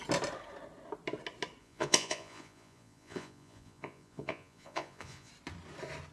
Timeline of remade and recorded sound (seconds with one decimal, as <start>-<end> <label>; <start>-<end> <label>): 0.0-1.6 recorded; 1.6-5.3 remade; 5.3-6.1 recorded